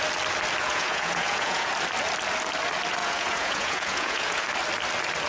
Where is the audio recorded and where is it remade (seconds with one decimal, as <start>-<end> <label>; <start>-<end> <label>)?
0.0-0.6 recorded; 0.6-1.7 remade; 1.7-3.0 recorded; 3.0-4.4 remade; 4.4-5.3 recorded